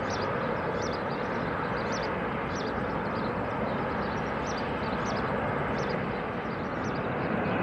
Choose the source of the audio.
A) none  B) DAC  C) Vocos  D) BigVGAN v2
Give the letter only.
A